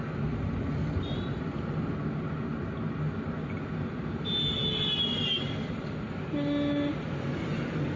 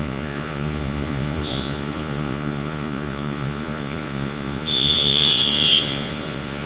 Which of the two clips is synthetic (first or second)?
second